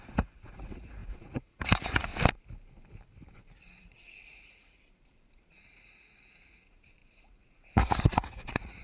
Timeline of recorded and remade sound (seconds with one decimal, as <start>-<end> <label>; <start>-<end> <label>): 0.0-2.1 remade; 2.1-3.8 recorded; 3.8-8.8 remade